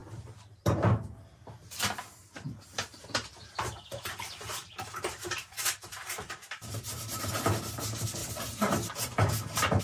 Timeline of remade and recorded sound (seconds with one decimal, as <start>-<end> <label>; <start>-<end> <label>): 0.0-0.9 remade; 0.9-2.2 recorded; 2.2-7.4 remade; 7.4-8.2 recorded; 8.2-9.8 remade